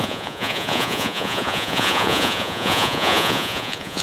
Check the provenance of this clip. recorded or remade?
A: remade